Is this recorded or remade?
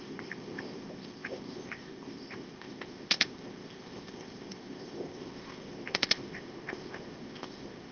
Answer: remade